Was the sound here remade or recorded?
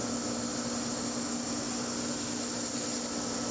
recorded